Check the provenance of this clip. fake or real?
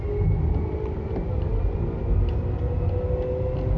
real